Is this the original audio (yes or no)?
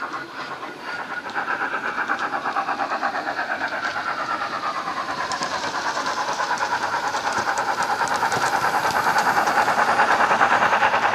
no